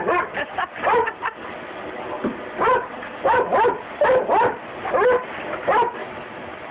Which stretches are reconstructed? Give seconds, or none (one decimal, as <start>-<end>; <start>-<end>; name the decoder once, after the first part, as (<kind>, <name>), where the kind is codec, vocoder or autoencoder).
6.0-6.7 (autoencoder, DAC-VAE)